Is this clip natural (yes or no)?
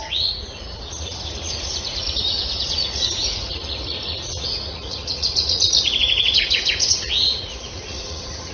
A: no